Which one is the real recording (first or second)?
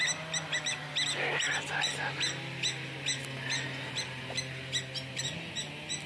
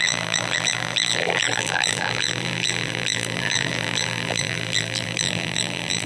first